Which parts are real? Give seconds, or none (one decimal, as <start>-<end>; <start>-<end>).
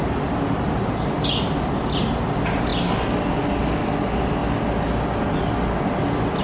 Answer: 0.0-6.4